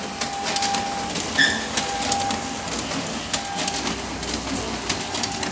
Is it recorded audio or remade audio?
recorded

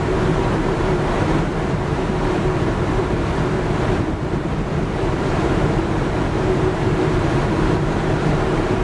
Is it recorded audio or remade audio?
remade